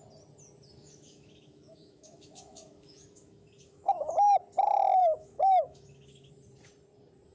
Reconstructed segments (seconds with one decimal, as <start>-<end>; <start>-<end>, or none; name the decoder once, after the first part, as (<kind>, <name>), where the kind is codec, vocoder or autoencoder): 0.8-4.4 (autoencoder, DAC-VAE); 5.0-6.3